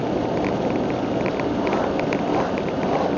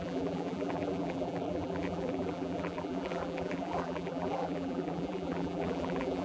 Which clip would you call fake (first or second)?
second